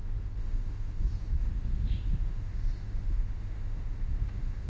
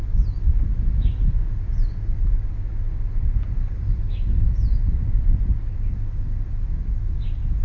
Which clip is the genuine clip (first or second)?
second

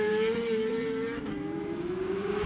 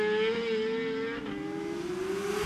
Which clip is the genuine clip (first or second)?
second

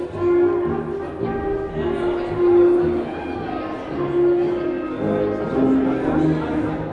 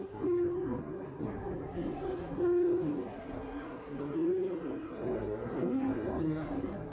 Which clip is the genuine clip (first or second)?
first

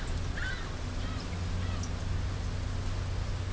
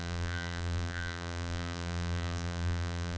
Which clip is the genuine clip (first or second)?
first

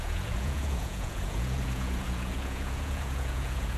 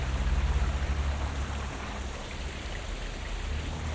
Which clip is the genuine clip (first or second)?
second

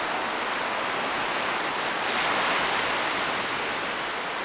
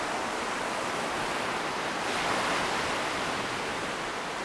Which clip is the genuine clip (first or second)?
first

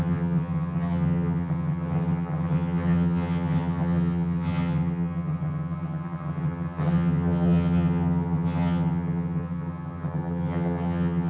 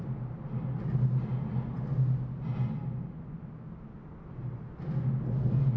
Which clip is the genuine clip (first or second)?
second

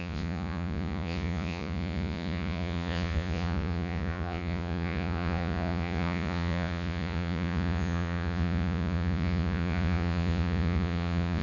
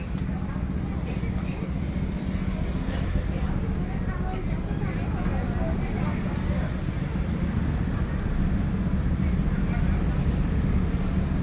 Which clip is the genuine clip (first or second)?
second